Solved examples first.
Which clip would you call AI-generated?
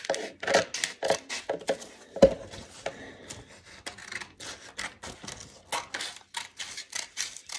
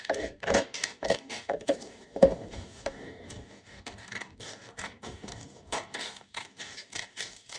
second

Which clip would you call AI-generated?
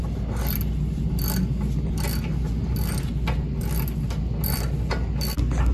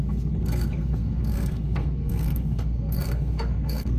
second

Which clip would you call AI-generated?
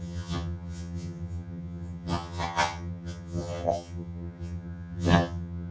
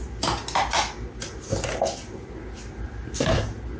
first